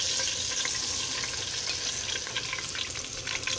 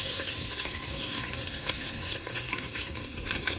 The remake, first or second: second